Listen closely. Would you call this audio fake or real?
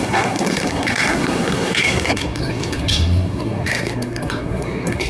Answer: fake